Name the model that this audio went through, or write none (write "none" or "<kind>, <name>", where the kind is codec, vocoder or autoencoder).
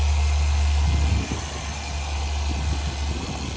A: none